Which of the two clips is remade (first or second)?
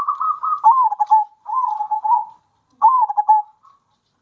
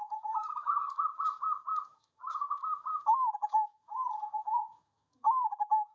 second